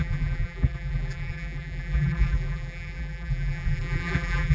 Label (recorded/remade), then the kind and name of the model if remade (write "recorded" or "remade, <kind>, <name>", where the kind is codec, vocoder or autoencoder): remade, vocoder, BigVGAN v2